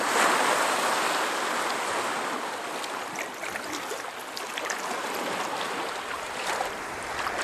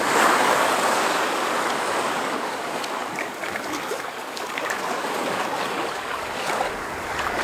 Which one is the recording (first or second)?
first